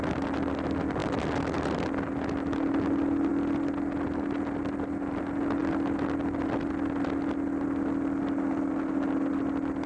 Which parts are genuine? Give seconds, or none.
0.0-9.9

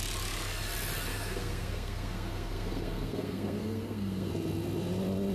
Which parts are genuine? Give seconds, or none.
0.0-1.1; 4.3-5.3

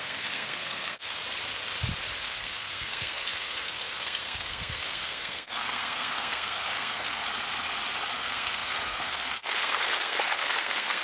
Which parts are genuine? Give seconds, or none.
1.2-2.2; 7.2-8.2

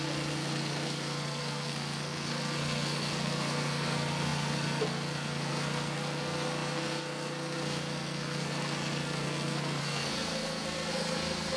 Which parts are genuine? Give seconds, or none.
none

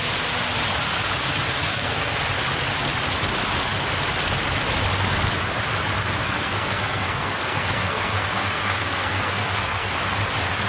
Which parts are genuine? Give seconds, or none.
0.0-1.6; 2.1-6.2; 9.9-10.7

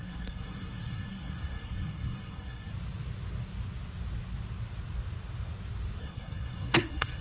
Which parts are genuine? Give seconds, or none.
2.7-6.0

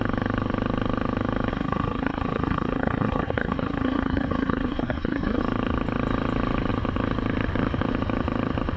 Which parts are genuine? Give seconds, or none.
0.0-1.5; 5.4-8.8

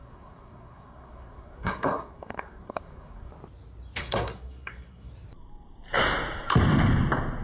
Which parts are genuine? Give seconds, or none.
3.3-4.0; 5.1-7.4